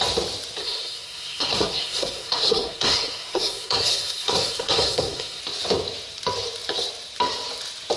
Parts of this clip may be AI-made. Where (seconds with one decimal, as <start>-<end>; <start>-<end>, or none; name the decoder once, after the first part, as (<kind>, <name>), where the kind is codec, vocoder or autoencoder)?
0.6-5.4 (codec, SNAC)